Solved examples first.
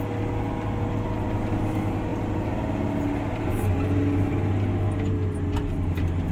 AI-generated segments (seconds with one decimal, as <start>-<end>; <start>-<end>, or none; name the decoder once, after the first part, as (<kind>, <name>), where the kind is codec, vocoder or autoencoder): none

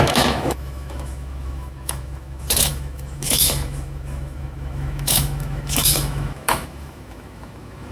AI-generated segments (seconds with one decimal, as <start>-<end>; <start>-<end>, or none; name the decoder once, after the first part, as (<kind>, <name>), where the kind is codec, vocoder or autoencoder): 0.0-7.9 (autoencoder, DAC-VAE)

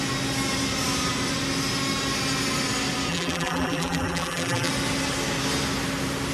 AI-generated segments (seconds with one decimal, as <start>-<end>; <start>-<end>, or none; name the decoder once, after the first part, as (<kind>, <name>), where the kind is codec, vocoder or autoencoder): 3.1-4.7 (vocoder, BigVGAN v2)

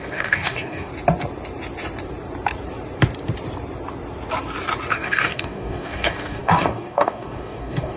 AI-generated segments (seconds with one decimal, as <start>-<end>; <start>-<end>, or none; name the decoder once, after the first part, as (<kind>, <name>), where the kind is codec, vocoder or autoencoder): 0.0-0.9 (codec, DAC); 4.9-8.0

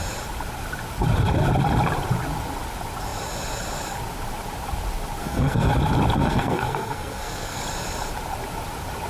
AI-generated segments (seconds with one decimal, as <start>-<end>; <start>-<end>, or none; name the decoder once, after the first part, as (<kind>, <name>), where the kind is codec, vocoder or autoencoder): 5.2-5.7 (codec, SNAC); 6.2-7.6

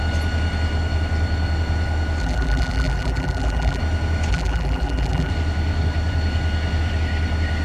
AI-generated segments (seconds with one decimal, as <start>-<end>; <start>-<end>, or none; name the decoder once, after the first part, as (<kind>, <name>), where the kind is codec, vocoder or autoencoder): 2.2-3.8 (vocoder, BigVGAN v2); 4.3-5.3

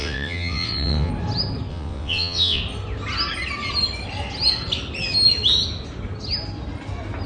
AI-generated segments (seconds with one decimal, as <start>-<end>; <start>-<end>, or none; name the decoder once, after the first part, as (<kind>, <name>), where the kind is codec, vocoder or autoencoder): 0.0-1.1 (vocoder, WaveNeXt); 1.7-2.6

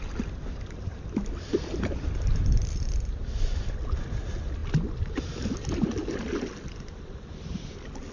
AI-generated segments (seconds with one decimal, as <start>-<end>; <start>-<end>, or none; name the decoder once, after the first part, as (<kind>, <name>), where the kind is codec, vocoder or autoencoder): none